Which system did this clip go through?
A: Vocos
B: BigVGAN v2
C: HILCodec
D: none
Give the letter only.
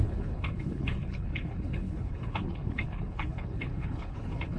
C